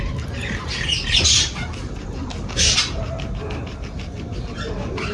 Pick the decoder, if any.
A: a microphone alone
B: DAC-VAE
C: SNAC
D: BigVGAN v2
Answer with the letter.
D